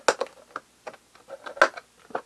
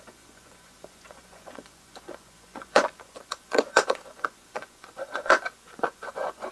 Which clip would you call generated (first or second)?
second